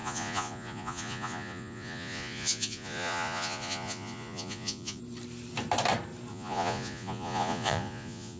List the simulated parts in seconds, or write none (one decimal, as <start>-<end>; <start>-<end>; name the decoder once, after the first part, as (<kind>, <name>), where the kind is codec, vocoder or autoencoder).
0.0-5.0 (vocoder, Vocos); 6.3-8.4